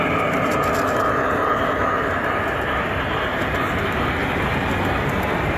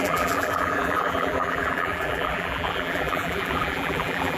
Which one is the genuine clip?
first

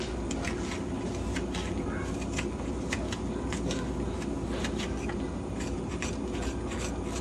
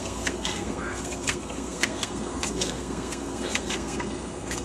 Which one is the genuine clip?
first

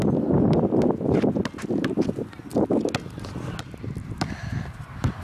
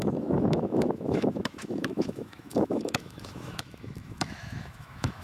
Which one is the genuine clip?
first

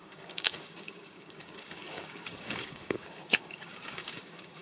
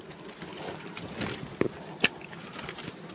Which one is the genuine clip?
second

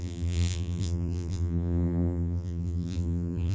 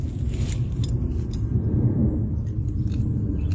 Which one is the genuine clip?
second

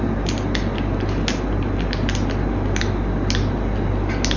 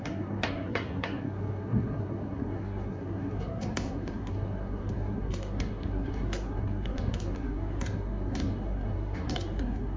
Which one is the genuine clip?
first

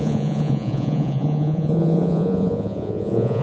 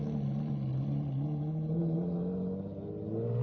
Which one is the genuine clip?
second